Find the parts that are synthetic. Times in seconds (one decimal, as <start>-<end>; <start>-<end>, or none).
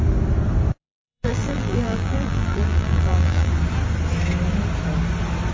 0.8-3.5